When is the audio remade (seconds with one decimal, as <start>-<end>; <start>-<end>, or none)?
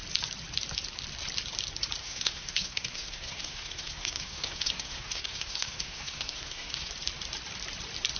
2.0-6.9